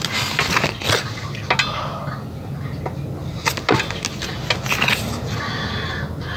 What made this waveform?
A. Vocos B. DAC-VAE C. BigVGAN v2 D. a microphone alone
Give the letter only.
D